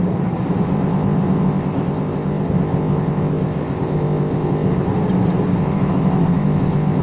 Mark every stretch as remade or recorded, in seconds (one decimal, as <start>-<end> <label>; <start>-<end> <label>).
0.0-0.7 recorded; 0.7-4.9 remade; 4.9-5.6 recorded; 5.6-7.0 remade